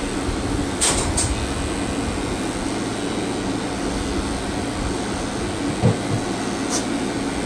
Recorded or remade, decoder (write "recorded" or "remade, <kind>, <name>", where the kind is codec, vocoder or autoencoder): recorded